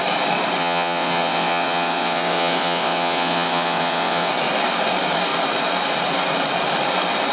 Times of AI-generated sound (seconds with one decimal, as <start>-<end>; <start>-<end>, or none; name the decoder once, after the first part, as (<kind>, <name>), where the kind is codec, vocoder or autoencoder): 0.6-4.3 (vocoder, WaveNeXt)